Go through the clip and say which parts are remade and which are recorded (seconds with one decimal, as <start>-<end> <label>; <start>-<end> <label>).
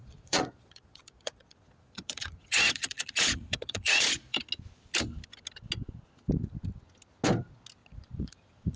0.0-4.4 remade; 4.4-7.8 recorded; 7.8-8.8 remade